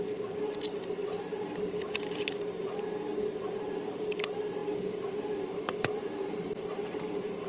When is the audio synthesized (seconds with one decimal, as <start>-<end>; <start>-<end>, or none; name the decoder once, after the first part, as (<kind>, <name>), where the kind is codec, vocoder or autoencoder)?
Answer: 0.0-1.0 (vocoder, BigVGAN v2); 3.6-7.5